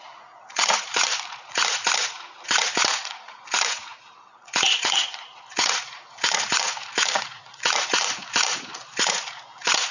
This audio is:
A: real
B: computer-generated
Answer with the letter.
B